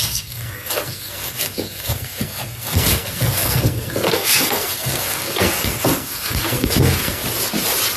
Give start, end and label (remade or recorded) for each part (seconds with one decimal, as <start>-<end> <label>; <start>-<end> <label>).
0.0-7.2 remade; 7.2-8.0 recorded